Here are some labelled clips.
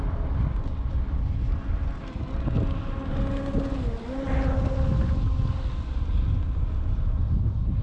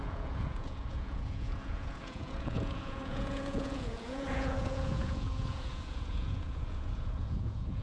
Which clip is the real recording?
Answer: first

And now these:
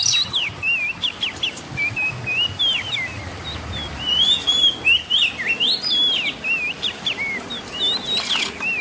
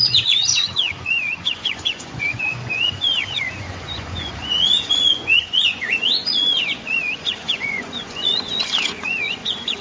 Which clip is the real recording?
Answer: first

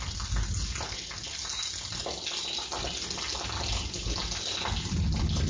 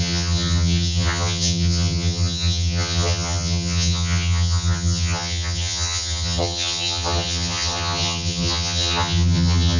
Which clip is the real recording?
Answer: first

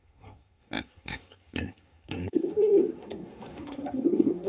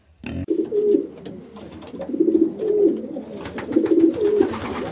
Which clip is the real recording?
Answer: second